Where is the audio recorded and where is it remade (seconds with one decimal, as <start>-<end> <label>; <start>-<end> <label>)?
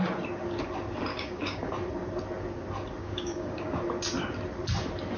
0.0-1.1 recorded; 1.1-1.7 remade; 1.7-3.0 recorded; 3.0-3.8 remade; 3.8-5.2 recorded